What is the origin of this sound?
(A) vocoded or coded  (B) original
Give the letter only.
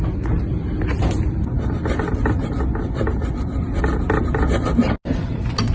B